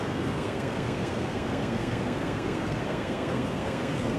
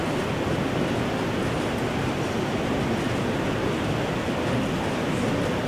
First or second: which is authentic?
second